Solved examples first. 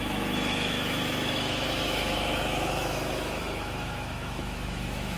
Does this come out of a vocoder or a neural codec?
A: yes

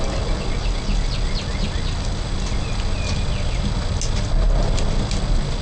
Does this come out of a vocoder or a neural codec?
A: no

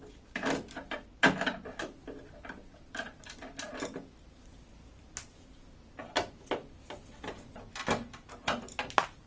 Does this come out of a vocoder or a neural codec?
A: no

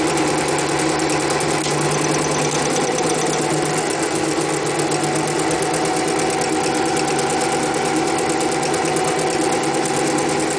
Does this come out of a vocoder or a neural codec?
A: no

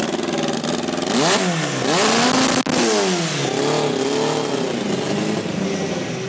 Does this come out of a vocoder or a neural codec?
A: no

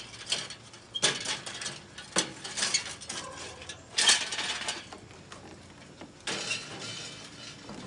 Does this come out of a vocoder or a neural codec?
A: no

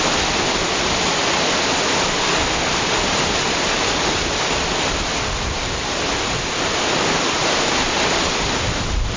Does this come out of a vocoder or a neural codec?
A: no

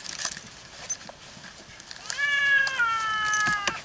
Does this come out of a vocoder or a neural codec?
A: no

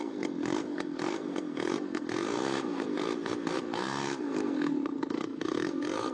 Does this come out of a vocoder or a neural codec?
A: yes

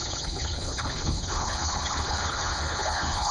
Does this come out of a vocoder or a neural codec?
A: yes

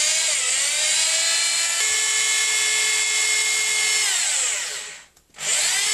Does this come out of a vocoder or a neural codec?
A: no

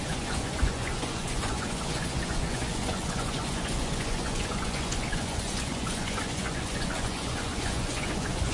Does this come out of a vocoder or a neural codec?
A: yes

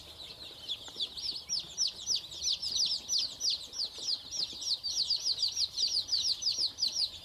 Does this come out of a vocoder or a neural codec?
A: no